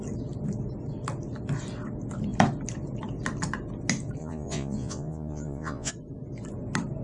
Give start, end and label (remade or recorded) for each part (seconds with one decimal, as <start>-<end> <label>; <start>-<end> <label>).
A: 0.0-4.2 recorded; 4.2-5.9 remade; 5.9-7.0 recorded